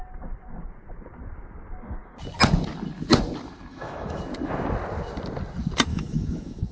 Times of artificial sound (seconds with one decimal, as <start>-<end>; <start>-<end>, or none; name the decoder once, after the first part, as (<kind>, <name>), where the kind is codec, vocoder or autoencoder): 3.7-4.2 (autoencoder, DAC-VAE); 5.9-6.7

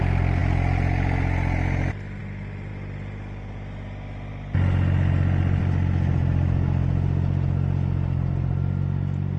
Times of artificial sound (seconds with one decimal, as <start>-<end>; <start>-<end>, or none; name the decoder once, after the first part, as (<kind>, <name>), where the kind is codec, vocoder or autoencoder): none

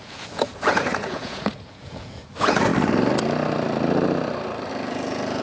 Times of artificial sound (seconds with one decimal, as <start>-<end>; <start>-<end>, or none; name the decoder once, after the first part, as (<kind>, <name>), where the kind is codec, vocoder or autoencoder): 0.0-2.7 (vocoder, Vocos); 4.7-5.4

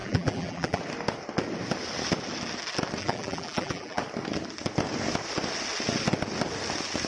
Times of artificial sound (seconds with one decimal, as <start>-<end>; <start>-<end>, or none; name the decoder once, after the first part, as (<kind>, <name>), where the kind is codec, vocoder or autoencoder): 0.0-0.8 (vocoder, BigVGAN v2); 3.0-4.0

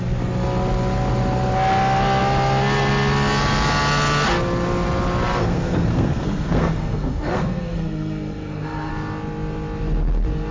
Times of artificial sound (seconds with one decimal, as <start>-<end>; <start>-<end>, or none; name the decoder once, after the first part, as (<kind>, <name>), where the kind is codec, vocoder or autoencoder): 5.4-8.9 (codec, SNAC)